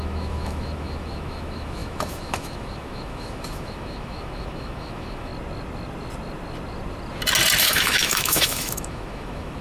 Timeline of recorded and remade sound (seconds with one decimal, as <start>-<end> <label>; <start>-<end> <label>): 0.0-5.3 remade; 5.3-7.6 recorded; 7.6-9.6 remade